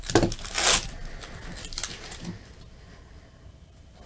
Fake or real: real